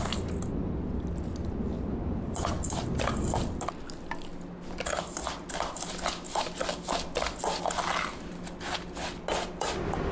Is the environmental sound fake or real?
real